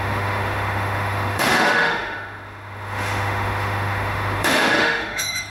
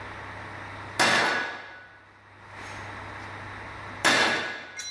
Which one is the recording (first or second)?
second